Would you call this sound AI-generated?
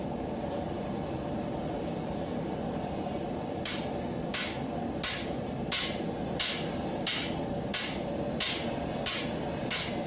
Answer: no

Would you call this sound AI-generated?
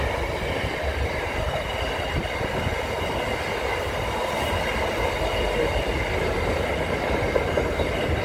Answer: no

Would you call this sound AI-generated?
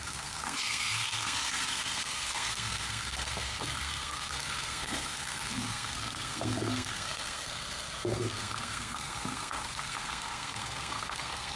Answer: yes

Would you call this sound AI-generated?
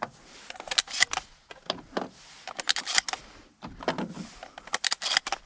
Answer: no